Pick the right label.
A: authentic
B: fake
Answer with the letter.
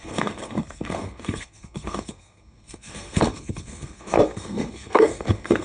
B